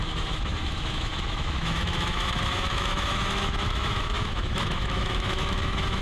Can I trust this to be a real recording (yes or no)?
no